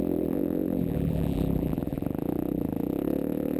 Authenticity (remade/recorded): remade